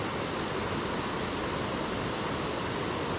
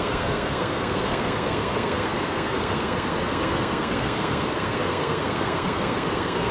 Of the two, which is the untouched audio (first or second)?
first